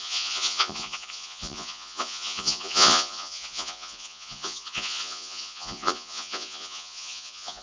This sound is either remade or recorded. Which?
remade